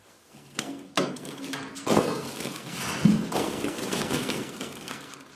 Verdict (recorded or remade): remade